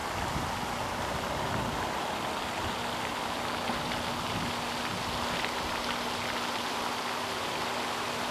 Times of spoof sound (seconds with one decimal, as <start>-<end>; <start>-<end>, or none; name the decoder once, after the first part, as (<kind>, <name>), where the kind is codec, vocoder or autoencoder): none